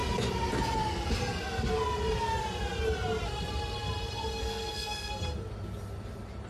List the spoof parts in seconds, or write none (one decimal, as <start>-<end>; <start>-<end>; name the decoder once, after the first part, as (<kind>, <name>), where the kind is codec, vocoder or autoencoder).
4.4-5.1 (codec, SNAC)